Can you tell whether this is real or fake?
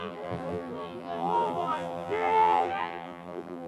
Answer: fake